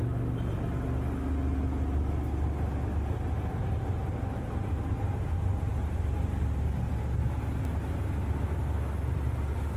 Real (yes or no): yes